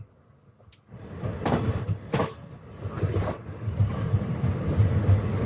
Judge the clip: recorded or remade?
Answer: recorded